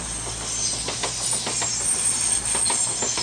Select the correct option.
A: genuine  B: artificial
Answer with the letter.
A